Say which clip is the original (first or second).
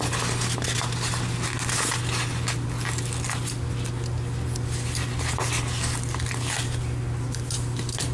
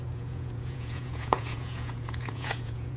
first